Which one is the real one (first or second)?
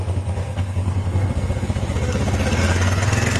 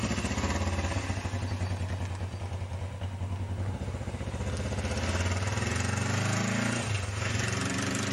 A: second